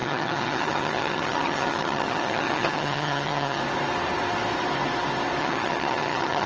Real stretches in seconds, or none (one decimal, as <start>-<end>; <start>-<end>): 3.6-5.4